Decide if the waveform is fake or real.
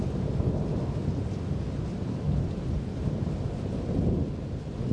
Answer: real